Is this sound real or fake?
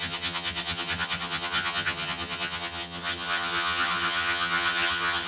fake